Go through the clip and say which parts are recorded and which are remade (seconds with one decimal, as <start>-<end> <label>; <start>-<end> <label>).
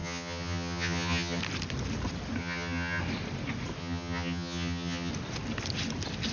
0.0-1.4 remade; 1.4-2.4 recorded; 2.4-3.0 remade; 3.0-3.8 recorded; 3.8-5.1 remade; 5.1-6.3 recorded